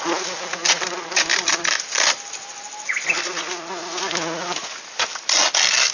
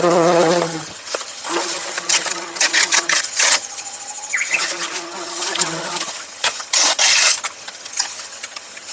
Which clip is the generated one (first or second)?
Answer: second